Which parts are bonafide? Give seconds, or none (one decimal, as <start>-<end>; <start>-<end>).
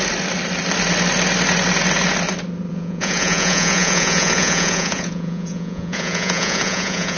0.0-2.7